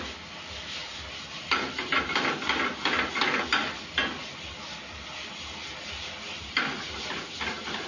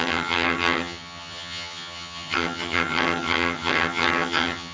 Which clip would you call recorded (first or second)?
first